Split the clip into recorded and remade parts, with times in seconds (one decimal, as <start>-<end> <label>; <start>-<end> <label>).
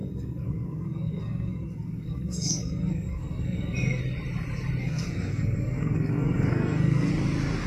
0.0-4.0 remade; 4.0-4.8 recorded; 4.8-7.1 remade; 7.1-7.7 recorded